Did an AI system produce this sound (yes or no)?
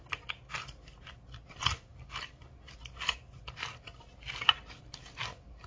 no